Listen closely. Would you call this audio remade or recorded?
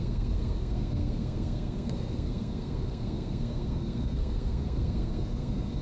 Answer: remade